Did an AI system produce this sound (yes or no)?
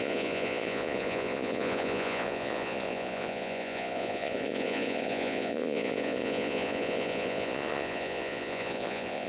yes